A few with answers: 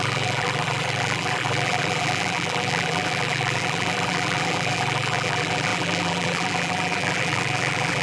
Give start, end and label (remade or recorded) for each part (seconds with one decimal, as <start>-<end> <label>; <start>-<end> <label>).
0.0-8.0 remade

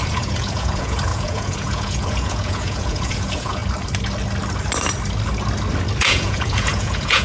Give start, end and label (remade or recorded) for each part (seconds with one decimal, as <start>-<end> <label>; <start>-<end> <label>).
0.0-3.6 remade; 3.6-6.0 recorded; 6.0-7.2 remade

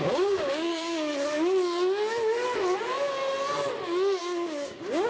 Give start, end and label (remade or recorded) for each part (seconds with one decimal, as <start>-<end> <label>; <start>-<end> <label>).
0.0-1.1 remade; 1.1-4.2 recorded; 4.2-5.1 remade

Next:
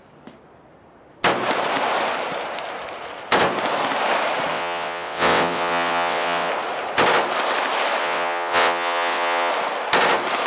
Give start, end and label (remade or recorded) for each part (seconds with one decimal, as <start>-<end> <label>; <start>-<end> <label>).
0.0-4.5 recorded; 4.5-6.5 remade; 6.5-8.0 recorded; 8.0-9.5 remade; 9.5-10.5 recorded

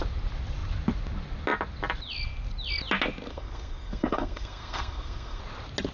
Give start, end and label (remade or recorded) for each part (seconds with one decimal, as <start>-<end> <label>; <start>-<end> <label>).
0.0-3.3 recorded; 3.3-5.4 remade; 5.4-5.9 recorded

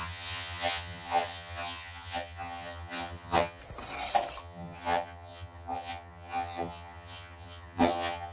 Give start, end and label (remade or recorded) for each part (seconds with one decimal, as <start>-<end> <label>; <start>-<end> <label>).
0.0-3.6 remade; 3.6-4.4 recorded; 4.4-8.3 remade

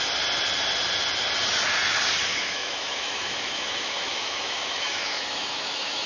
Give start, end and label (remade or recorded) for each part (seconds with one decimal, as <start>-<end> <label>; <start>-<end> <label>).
0.0-2.3 recorded; 2.3-6.1 remade